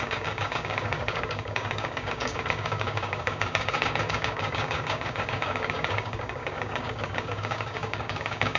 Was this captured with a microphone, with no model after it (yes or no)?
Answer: no